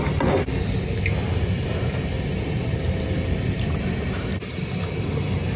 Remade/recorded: recorded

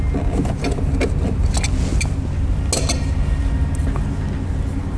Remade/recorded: recorded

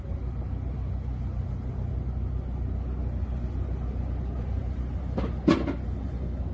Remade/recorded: recorded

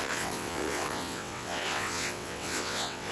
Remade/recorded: remade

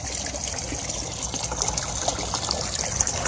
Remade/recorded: recorded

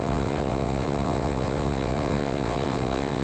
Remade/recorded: remade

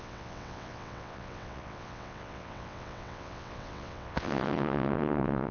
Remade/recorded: remade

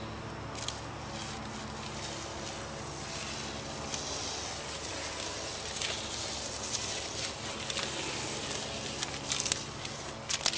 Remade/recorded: recorded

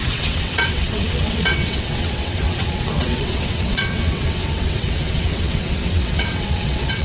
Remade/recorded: remade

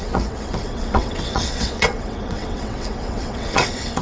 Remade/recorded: remade